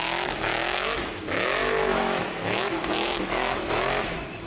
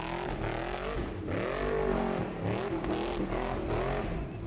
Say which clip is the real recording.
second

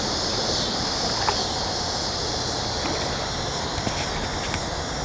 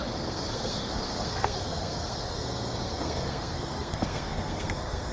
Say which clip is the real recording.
first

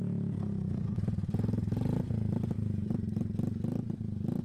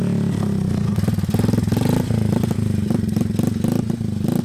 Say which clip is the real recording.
second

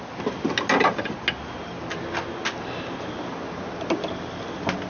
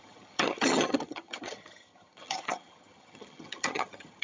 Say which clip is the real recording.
first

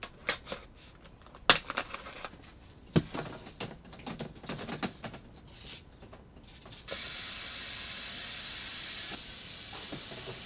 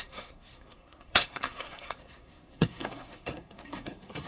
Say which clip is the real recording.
first